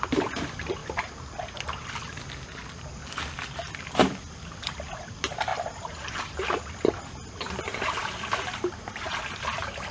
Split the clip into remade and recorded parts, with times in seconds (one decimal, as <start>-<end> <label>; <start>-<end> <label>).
0.0-9.9 recorded

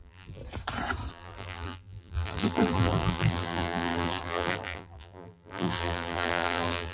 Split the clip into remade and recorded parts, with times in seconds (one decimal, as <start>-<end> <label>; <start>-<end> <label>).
0.0-0.4 remade; 0.4-1.1 recorded; 1.1-6.9 remade

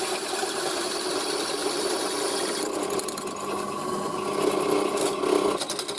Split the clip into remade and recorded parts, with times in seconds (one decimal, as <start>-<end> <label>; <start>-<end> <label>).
0.0-6.0 recorded

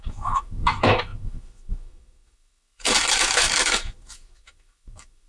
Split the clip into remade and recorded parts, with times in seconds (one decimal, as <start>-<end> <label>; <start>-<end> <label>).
0.0-5.3 remade

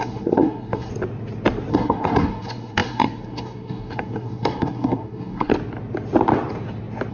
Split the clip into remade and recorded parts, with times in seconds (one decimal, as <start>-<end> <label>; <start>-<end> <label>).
0.0-0.9 remade; 0.9-1.7 recorded; 1.7-5.5 remade; 5.5-7.1 recorded

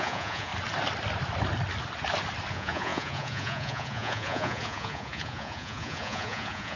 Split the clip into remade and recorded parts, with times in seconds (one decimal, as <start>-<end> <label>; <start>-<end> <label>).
0.0-0.5 remade; 0.5-2.5 recorded; 2.5-6.8 remade

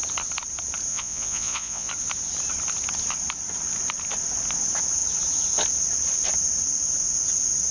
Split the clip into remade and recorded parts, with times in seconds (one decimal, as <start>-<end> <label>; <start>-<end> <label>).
0.0-0.9 recorded; 0.9-1.9 remade; 1.9-7.7 recorded

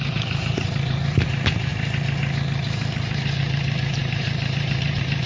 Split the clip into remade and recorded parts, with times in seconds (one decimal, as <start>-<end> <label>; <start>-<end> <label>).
0.0-1.7 remade; 1.7-3.4 recorded; 3.4-5.3 remade